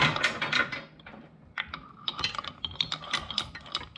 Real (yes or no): no